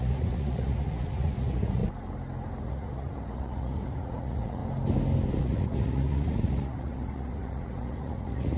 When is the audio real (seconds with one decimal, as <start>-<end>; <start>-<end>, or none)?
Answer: 1.8-2.6; 4.6-5.4